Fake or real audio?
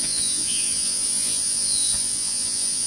fake